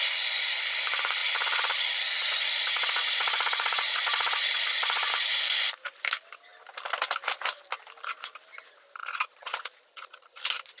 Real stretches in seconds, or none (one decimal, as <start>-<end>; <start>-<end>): 0.0-1.2; 5.1-9.0; 10.4-10.8